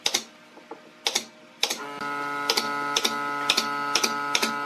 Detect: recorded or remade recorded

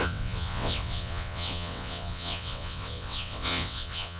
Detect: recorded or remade remade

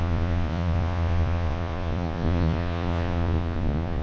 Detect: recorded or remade remade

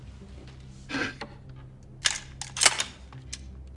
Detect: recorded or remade recorded